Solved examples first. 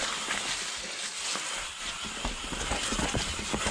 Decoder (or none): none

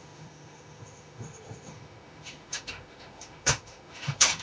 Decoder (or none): autoencoder, DAC-VAE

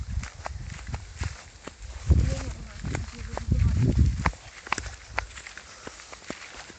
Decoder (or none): none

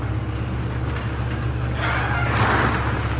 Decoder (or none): none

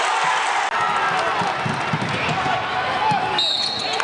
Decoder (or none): none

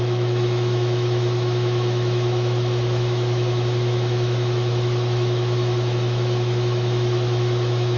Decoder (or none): autoencoder, DAC-VAE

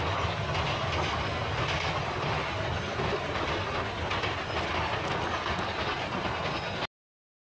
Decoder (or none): none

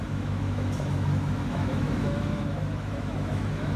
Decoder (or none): autoencoder, DAC-VAE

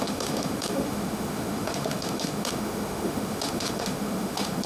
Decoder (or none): autoencoder, DAC-VAE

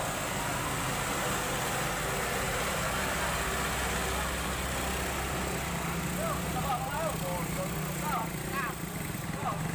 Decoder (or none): none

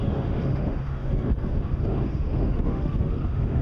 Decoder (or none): autoencoder, DAC-VAE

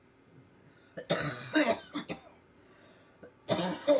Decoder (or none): none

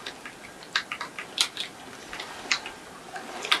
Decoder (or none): none